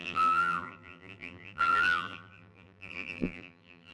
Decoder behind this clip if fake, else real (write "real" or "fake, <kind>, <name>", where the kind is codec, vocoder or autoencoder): fake, vocoder, BigVGAN v2